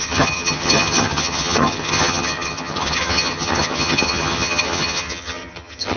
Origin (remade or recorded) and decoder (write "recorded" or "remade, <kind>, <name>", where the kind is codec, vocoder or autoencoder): remade, vocoder, HiFi-GAN